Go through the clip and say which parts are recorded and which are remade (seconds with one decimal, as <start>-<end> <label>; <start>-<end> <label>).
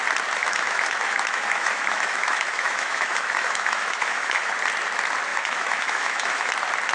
0.0-0.4 recorded; 0.4-4.5 remade; 4.5-5.3 recorded; 5.3-6.5 remade; 6.5-6.9 recorded